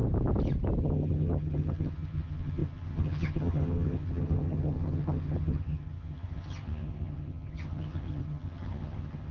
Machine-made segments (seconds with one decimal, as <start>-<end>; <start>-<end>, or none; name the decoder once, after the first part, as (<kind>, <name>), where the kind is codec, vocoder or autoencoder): 0.8-9.3 (vocoder, HiFi-GAN)